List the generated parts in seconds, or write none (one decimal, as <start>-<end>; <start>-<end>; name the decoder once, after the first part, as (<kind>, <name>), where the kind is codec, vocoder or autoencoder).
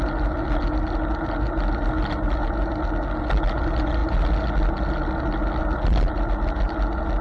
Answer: none